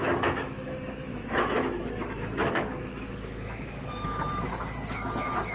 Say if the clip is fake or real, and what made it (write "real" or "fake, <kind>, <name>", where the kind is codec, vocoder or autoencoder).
fake, autoencoder, DAC-VAE